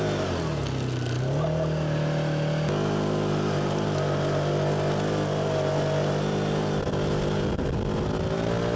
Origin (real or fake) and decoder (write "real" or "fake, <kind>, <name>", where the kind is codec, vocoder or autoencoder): real